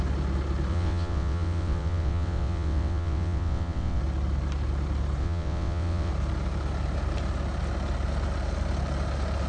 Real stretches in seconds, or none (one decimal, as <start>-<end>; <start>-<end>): 0.0-0.7; 4.0-5.2; 6.1-9.5

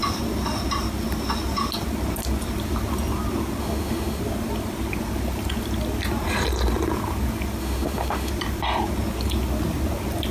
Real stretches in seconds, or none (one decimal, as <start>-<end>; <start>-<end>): 0.0-3.6; 4.2-7.6; 8.3-10.3